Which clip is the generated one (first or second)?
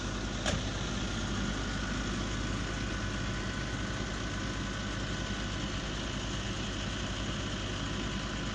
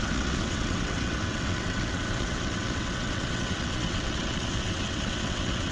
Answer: second